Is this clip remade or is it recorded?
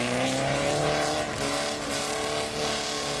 recorded